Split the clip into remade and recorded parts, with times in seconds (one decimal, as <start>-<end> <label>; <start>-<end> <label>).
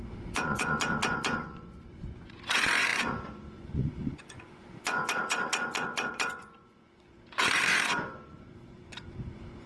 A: 0.0-9.7 remade